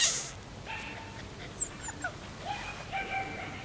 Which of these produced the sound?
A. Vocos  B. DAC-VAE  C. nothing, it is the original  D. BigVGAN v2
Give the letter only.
C